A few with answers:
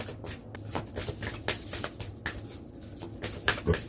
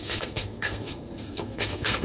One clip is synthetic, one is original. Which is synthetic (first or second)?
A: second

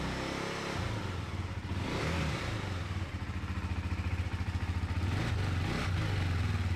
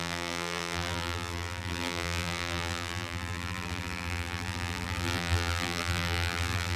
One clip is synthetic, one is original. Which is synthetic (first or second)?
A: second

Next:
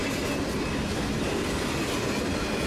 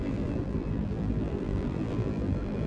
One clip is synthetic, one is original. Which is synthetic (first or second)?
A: second